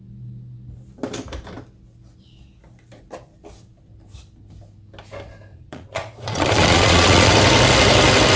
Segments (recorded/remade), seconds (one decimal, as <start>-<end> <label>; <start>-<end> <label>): 0.0-5.5 recorded; 5.5-7.3 remade; 7.3-8.4 recorded